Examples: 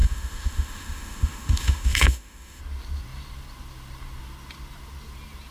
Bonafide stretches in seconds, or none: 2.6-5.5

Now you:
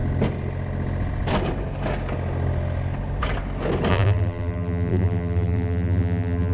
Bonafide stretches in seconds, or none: 0.0-3.9

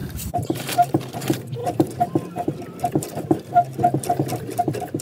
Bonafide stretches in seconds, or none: 1.1-5.0

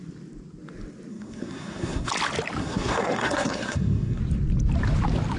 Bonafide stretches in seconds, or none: 0.0-1.1; 2.1-2.6; 4.2-5.4

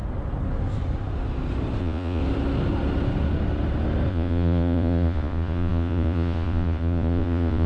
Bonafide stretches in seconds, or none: 0.0-1.8; 2.2-4.1

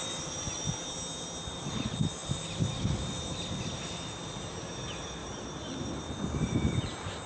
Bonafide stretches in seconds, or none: 0.0-2.2; 4.3-5.2; 6.8-7.3

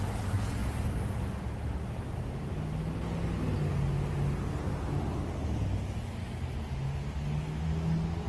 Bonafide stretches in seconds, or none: 0.0-8.3